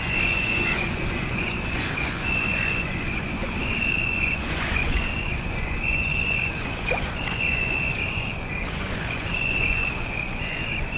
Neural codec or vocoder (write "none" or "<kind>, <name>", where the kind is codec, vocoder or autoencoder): vocoder, Vocos